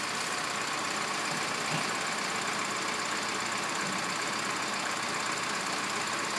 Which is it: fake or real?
real